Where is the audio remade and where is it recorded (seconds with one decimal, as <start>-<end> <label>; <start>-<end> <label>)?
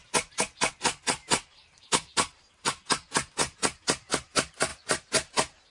0.0-1.2 recorded; 1.2-2.4 remade; 2.4-5.7 recorded